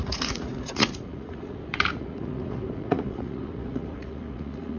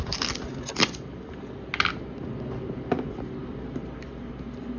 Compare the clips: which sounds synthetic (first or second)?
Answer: first